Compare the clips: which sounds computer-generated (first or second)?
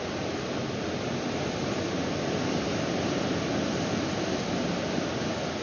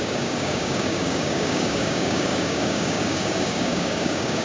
second